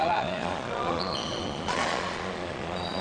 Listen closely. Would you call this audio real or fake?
fake